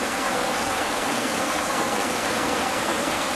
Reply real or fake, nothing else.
fake